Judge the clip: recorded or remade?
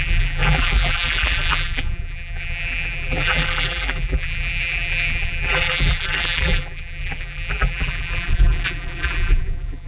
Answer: remade